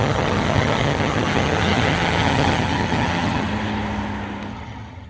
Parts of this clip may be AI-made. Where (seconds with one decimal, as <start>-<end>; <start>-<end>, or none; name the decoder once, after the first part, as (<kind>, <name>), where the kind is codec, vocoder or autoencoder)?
0.0-3.5 (vocoder, HiFi-GAN); 4.5-5.1